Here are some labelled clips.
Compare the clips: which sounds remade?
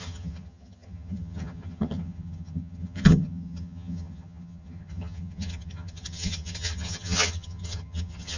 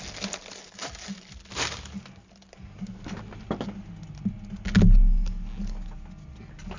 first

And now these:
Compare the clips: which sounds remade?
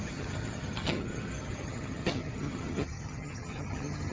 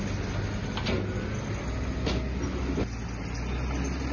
first